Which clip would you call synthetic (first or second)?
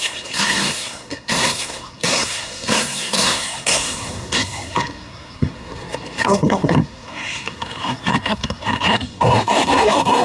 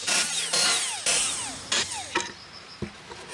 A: first